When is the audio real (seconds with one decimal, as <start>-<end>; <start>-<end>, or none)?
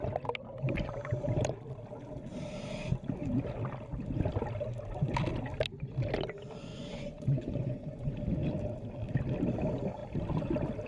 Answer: 0.0-6.7; 8.1-10.9